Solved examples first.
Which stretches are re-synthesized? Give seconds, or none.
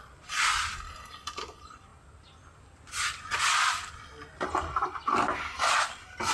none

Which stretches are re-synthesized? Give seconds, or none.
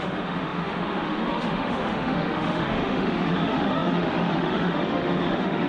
0.0-5.7 (autoencoder, DAC-VAE)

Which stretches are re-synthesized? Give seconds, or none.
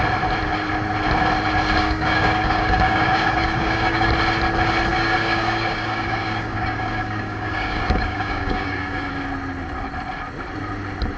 1.8-4.1 (codec, DAC); 4.9-9.1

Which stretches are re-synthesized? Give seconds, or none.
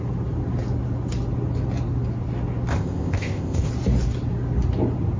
2.7-3.7 (codec, ZipCodec)